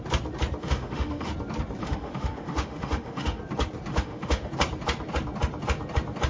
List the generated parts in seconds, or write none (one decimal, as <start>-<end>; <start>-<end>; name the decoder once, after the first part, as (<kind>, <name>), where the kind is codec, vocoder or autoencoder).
0.6-1.3 (autoencoder, DAC-VAE); 1.8-3.4; 3.9-4.5